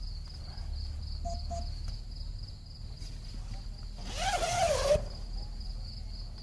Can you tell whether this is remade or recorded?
recorded